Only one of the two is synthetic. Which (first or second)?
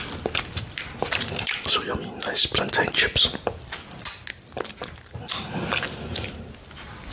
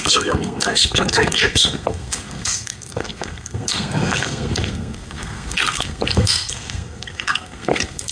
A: second